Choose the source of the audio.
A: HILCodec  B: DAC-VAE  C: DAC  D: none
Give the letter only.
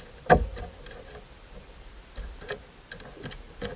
D